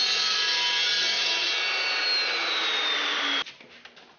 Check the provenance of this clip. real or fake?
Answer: real